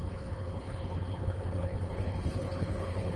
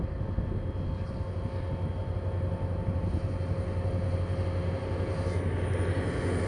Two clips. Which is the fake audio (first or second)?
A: first